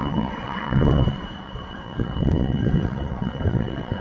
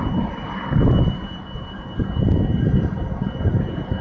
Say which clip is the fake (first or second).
first